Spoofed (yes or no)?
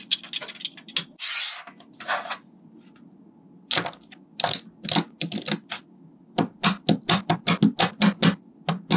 no